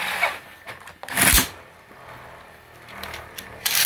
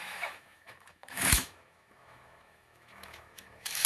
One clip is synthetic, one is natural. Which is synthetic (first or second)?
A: second